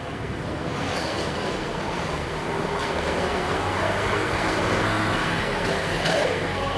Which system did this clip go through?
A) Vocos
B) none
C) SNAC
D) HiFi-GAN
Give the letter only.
C